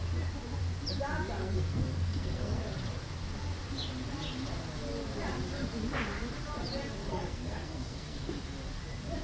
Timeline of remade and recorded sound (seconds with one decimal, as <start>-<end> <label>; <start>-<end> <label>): 0.0-1.4 recorded; 1.4-2.6 remade; 2.6-7.0 recorded; 7.0-8.3 remade; 8.3-9.2 recorded